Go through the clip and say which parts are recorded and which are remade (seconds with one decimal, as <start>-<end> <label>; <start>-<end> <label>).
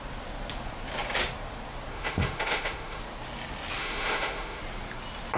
0.0-1.9 recorded; 1.9-3.0 remade; 3.0-3.8 recorded; 3.8-4.6 remade; 4.6-5.4 recorded